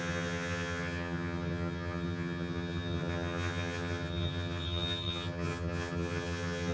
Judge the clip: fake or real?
fake